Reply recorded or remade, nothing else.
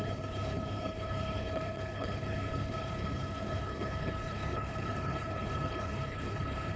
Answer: remade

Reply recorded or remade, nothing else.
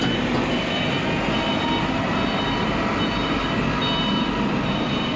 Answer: recorded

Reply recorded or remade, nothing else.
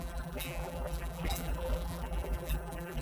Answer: remade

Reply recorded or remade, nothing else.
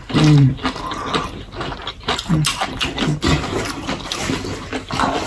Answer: recorded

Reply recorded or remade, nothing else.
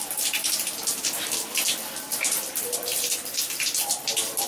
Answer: recorded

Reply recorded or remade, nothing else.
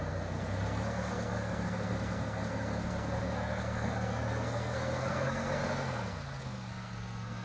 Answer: remade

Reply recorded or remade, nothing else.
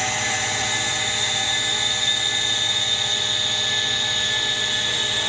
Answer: recorded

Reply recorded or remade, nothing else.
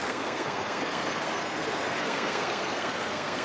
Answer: remade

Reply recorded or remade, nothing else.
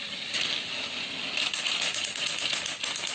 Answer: recorded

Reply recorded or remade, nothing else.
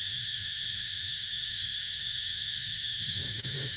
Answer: remade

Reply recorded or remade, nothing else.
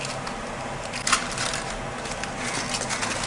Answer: recorded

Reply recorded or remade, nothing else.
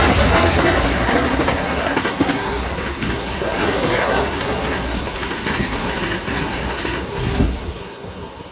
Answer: remade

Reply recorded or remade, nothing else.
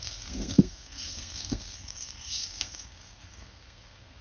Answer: remade